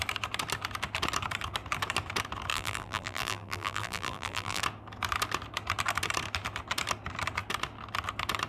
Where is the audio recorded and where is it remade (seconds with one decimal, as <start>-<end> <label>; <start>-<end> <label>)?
0.0-2.5 recorded; 2.5-4.6 remade; 4.6-8.5 recorded